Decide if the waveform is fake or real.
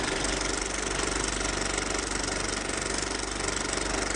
real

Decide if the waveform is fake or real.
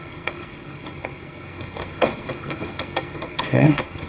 fake